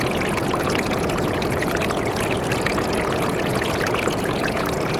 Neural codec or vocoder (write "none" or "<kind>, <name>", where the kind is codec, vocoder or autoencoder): vocoder, Vocos